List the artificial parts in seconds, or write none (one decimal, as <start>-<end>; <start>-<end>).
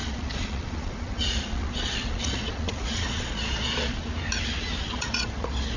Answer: 0.0-4.0; 4.8-5.8